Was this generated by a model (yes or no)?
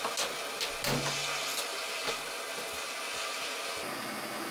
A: no